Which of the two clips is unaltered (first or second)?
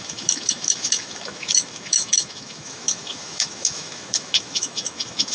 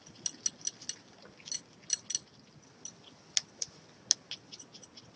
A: second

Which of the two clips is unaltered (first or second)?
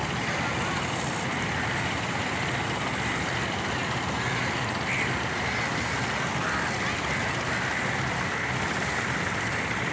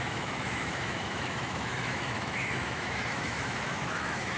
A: first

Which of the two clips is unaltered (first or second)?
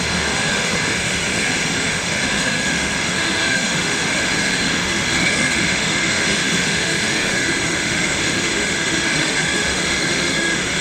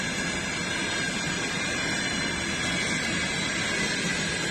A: second